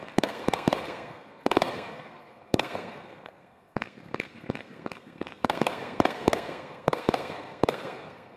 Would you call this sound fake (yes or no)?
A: yes